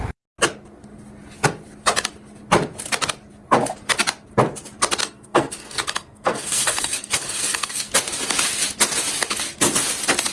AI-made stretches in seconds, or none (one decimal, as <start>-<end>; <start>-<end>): 5.0-7.9